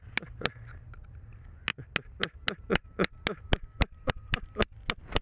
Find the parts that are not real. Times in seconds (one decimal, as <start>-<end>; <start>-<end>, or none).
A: none